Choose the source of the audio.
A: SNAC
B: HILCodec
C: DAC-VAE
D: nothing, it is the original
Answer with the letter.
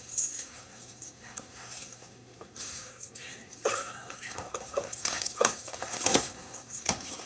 A